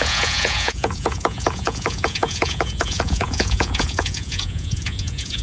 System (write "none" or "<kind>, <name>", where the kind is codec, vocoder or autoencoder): vocoder, Vocos